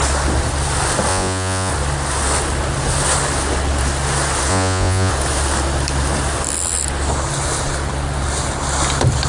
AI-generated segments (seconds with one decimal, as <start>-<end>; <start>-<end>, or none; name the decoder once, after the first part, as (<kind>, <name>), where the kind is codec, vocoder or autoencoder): 1.1-1.7 (vocoder, Vocos); 4.5-5.1